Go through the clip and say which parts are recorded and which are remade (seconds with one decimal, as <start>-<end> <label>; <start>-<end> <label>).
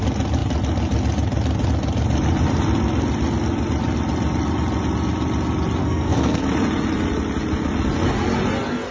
0.0-5.8 recorded; 5.8-6.4 remade; 6.4-8.9 recorded